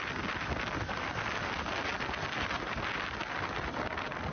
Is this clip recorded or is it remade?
recorded